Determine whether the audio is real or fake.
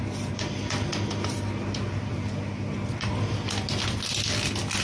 real